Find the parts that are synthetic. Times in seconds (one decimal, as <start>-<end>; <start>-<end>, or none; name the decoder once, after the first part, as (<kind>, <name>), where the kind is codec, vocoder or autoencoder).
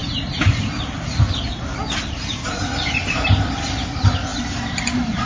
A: 0.0-3.0 (vocoder, BigVGAN v2); 4.3-5.3